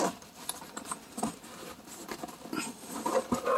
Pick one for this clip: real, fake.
real